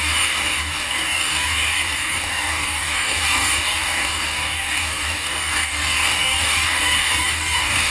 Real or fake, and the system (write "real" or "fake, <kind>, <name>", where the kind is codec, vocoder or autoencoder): fake, codec, DAC